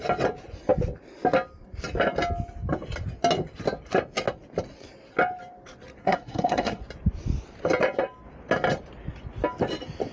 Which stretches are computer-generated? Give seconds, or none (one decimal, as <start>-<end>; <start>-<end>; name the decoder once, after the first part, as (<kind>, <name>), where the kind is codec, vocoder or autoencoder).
6.0-6.8 (codec, SNAC)